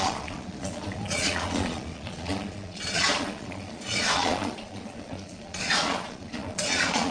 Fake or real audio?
fake